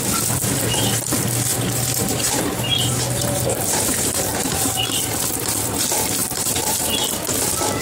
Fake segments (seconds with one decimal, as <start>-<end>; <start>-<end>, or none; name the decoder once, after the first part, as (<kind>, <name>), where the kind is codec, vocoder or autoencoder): 1.5-5.0 (vocoder, BigVGAN v2); 6.2-6.9